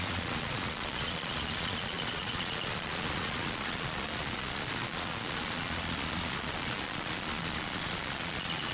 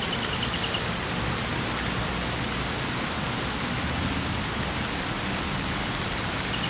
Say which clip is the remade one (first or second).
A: first